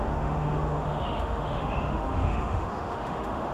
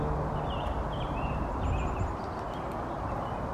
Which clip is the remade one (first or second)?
first